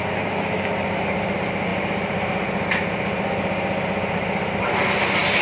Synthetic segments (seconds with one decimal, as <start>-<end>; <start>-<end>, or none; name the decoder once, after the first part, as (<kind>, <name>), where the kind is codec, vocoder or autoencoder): none